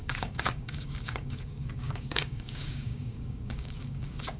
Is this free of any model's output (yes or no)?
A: no